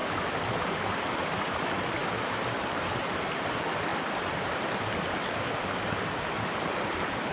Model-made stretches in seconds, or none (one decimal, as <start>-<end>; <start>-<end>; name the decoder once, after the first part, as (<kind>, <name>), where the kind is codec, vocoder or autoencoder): none